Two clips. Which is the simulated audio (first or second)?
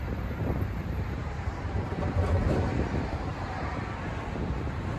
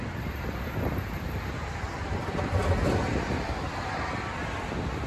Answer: first